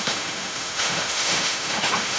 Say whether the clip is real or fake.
fake